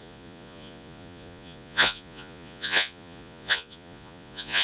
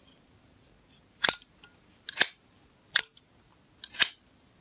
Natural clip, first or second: second